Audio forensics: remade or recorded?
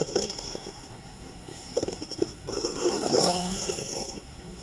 remade